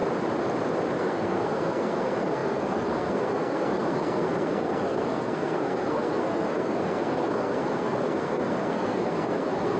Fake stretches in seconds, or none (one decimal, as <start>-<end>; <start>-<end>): 1.0-9.8